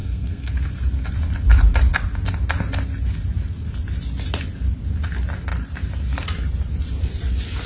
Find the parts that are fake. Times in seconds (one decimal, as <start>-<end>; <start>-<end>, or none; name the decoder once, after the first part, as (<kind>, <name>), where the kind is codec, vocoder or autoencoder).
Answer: 0.0-0.5 (codec, SNAC)